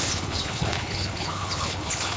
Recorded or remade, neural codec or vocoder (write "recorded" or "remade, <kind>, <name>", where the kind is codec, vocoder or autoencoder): remade, codec, HILCodec